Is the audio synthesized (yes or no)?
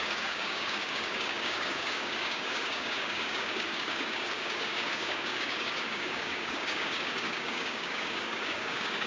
yes